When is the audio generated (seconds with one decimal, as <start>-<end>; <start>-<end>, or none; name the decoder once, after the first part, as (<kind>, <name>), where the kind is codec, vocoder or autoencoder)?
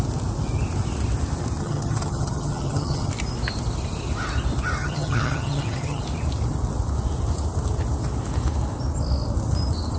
1.6-3.1 (vocoder, HiFi-GAN); 4.8-6.0